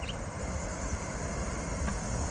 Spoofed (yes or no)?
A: no